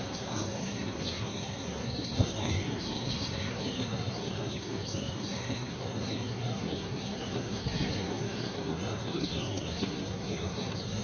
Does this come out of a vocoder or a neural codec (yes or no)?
yes